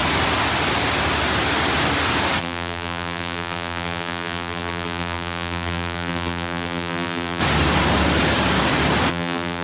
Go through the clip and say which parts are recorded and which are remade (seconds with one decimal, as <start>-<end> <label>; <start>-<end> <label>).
0.0-2.4 recorded; 2.4-7.4 remade; 7.4-9.1 recorded; 9.1-9.6 remade